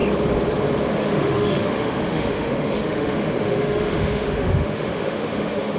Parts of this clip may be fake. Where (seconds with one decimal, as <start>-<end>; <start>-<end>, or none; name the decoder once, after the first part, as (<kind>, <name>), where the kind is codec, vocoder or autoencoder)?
0.9-5.8 (autoencoder, DAC-VAE)